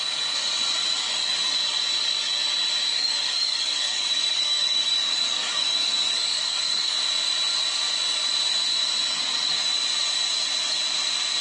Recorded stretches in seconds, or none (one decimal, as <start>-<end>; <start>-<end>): 0.0-2.9; 7.0-11.4